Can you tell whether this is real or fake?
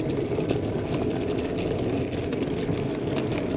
real